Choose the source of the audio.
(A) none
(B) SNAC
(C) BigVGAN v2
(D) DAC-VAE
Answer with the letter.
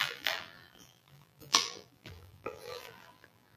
C